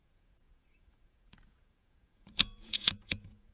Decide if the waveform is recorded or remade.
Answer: remade